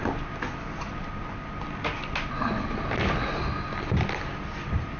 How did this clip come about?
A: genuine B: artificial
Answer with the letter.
A